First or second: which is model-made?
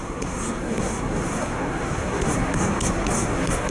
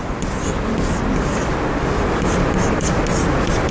first